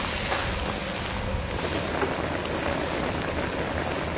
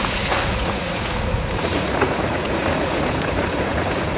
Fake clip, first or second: second